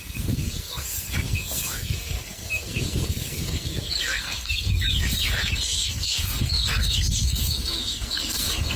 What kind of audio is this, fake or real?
fake